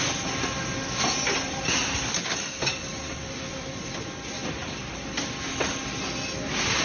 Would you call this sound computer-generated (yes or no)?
no